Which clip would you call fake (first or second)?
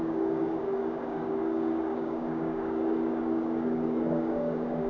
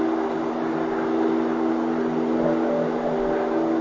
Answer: first